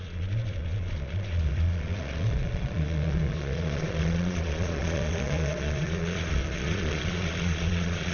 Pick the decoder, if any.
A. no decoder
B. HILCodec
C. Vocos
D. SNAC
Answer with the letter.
C